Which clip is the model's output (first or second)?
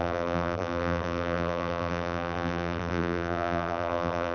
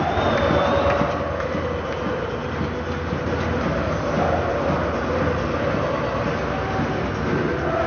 first